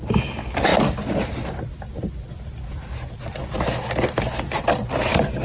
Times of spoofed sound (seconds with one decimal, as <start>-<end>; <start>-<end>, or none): none